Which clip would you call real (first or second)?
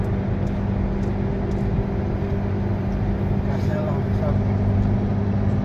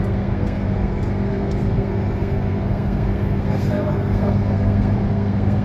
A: first